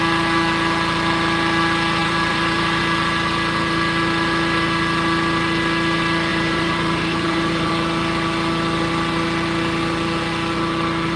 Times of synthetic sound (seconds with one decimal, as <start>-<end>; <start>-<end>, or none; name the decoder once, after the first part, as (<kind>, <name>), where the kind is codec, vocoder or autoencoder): 2.0-2.8 (vocoder, BigVGAN v2); 6.3-7.7